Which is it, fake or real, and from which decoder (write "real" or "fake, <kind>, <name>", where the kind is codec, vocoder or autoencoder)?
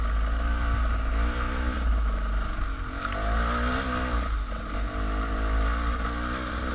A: real